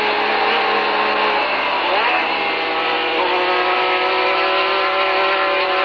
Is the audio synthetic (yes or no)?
no